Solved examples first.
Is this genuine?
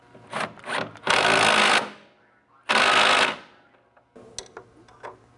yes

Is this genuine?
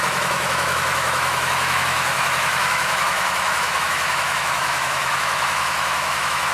no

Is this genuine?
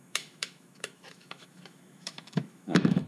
no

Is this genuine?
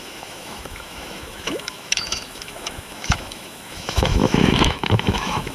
no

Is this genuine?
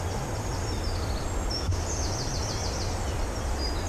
yes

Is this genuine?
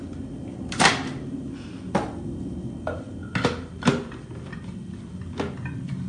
yes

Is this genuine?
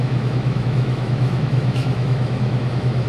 no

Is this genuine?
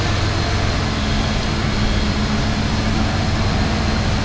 yes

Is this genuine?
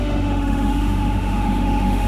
no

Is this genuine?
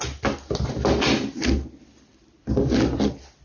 yes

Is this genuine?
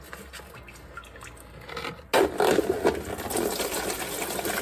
yes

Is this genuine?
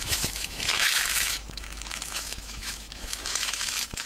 no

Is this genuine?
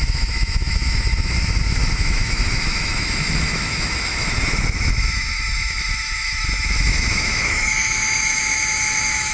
no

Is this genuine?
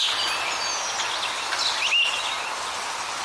yes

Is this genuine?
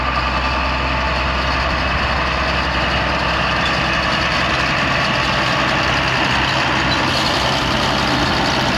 yes